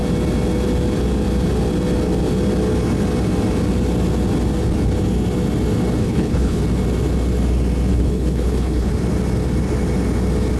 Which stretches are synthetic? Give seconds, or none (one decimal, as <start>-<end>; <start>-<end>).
6.0-6.6; 7.9-8.9